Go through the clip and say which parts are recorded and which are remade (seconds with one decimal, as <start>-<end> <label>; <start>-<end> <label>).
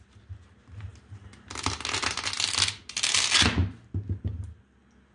0.0-5.1 recorded